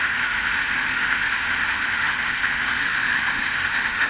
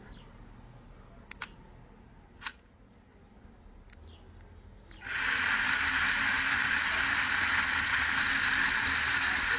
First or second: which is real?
second